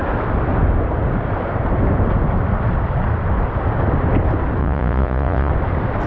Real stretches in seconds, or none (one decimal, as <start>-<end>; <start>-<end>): 0.0-4.6; 5.5-6.1